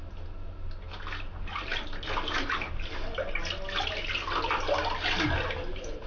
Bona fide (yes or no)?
yes